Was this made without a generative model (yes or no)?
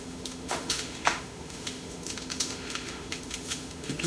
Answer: no